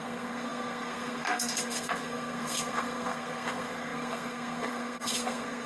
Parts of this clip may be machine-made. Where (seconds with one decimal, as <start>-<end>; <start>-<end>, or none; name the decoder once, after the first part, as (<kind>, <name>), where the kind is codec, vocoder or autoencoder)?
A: 0.0-5.7 (codec, SNAC)